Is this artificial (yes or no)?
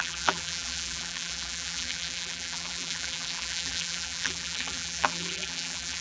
yes